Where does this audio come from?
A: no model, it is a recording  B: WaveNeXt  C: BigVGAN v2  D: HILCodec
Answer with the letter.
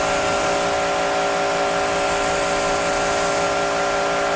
A